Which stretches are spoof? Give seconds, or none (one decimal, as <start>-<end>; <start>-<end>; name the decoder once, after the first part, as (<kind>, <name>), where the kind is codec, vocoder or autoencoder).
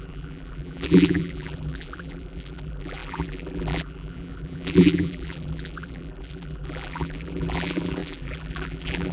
0.0-9.1 (vocoder, BigVGAN v2)